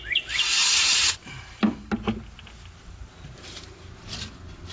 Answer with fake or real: real